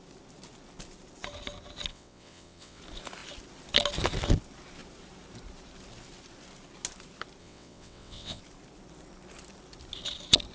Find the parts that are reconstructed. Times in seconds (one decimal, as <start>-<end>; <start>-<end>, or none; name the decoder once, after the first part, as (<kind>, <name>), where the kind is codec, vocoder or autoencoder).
1.9-2.8 (vocoder, WaveNeXt); 7.4-8.4